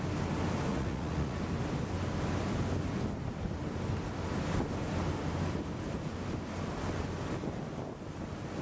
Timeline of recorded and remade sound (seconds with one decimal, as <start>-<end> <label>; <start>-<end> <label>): 0.0-0.7 recorded; 0.7-1.4 remade; 1.4-8.6 recorded